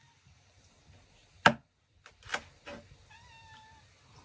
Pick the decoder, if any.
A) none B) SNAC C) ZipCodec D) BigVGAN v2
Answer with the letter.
A